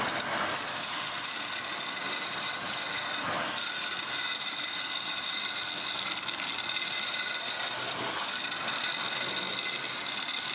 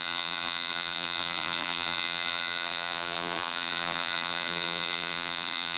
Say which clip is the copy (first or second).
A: second